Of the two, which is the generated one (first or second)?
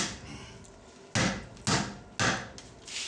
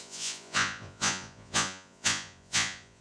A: second